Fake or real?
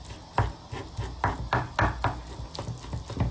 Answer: real